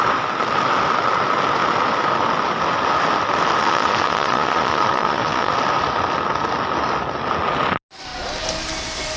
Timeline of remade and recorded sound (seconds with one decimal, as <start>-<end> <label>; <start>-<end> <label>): 0.0-3.6 recorded; 3.6-5.5 remade; 5.5-9.2 recorded